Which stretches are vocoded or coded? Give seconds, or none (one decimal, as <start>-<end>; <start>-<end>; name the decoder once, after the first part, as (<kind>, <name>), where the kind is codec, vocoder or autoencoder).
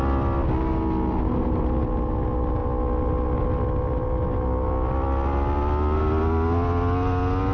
none